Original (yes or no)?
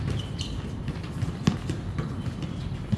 yes